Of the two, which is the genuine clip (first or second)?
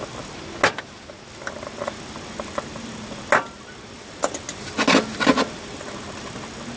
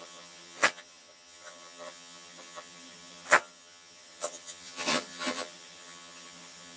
first